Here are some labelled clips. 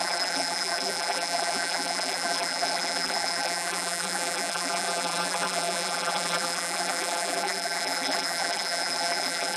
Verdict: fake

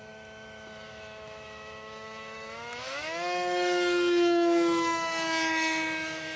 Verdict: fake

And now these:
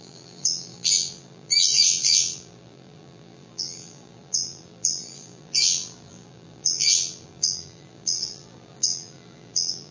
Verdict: fake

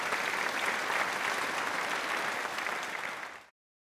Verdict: real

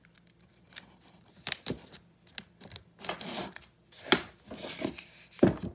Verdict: real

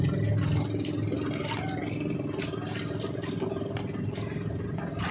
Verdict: real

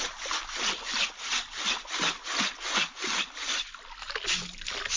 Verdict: real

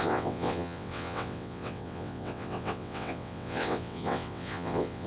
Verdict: fake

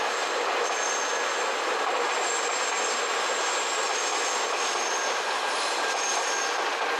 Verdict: real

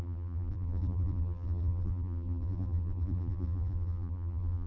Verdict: fake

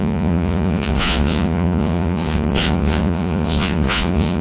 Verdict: fake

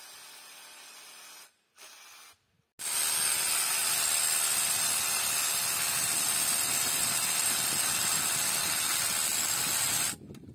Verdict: real